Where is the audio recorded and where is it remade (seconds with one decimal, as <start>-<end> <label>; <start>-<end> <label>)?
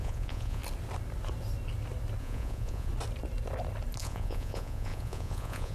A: 0.0-0.6 remade; 0.6-2.2 recorded; 2.2-2.9 remade; 2.9-4.0 recorded; 4.0-5.7 remade